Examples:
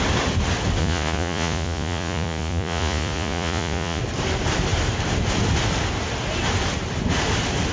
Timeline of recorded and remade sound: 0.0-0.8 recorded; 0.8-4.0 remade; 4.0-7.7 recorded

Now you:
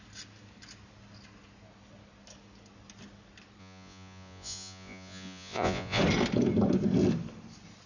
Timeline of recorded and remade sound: 0.0-3.6 recorded; 3.6-6.0 remade; 6.0-7.9 recorded

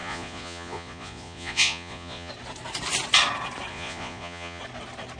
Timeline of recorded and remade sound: 0.0-2.3 remade; 2.3-3.7 recorded; 3.7-4.6 remade; 4.6-5.2 recorded

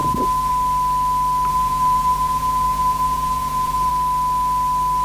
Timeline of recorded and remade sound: 0.0-0.5 remade; 0.5-1.5 recorded; 1.5-3.9 remade; 3.9-5.0 recorded

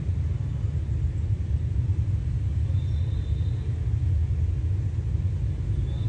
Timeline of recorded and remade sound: 0.0-6.1 recorded

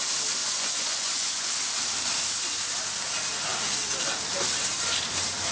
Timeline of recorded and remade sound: 0.0-0.4 recorded; 0.4-1.5 remade; 1.5-5.5 recorded

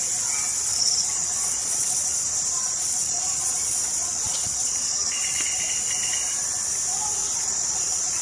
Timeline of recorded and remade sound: 0.0-0.7 recorded; 0.7-5.6 remade; 5.6-7.2 recorded; 7.2-8.2 remade